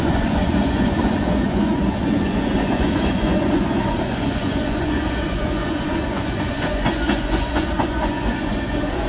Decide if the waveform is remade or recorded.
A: remade